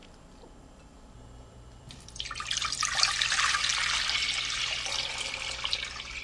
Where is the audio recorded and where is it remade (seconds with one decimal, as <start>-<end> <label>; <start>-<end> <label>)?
0.0-3.7 remade; 3.7-6.2 recorded